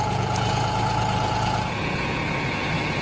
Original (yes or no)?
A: no